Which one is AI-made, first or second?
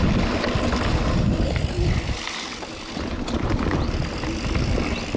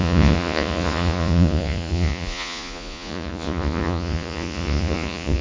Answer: second